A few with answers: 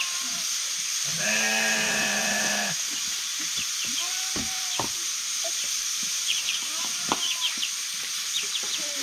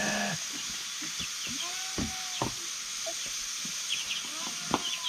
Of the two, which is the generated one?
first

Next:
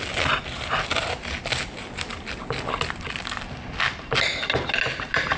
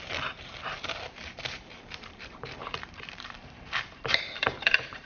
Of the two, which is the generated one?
second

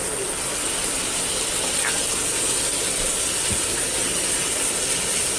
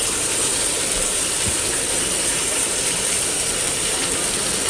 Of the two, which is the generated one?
second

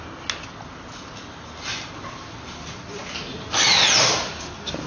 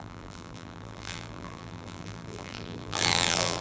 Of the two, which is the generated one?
second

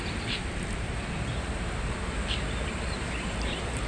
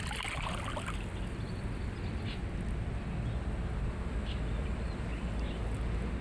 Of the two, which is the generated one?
first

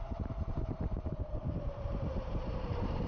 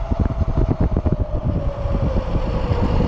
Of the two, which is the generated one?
first